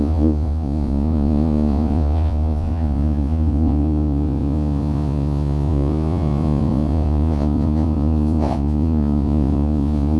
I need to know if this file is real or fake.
fake